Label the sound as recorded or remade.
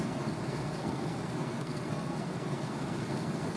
remade